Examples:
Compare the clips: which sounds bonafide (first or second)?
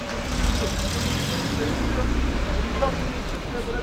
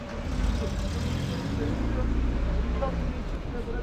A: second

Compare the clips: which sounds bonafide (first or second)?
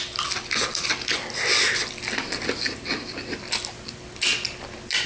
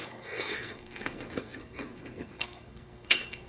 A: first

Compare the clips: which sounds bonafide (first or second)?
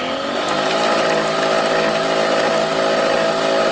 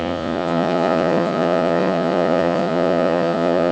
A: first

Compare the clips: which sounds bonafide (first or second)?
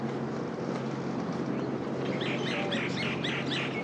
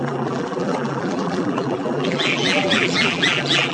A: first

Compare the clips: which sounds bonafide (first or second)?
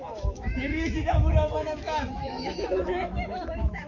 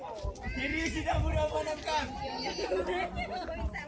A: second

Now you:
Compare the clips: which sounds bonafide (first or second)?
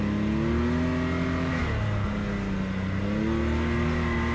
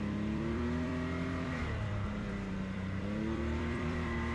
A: first